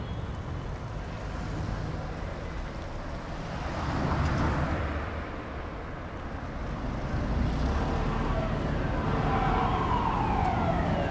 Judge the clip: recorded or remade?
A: recorded